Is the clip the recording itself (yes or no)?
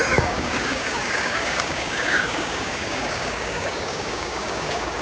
no